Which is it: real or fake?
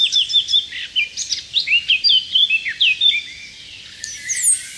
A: real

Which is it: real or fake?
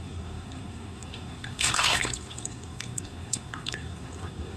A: fake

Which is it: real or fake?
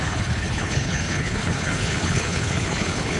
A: fake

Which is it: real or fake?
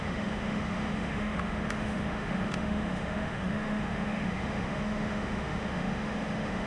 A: fake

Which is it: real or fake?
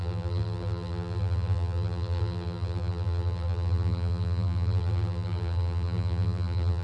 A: fake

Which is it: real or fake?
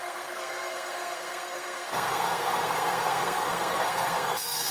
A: fake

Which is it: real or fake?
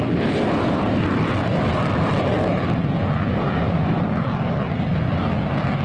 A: real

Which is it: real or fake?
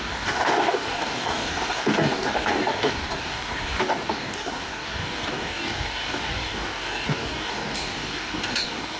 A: fake